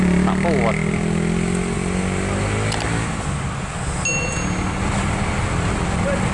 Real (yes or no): yes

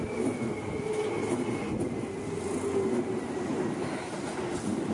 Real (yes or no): yes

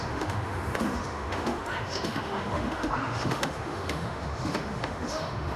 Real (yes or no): no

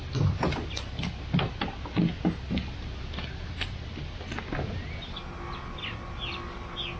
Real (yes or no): yes